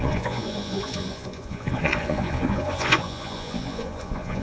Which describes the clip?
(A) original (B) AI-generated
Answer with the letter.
B